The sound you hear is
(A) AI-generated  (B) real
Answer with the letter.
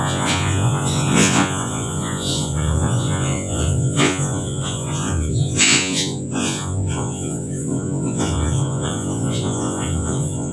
A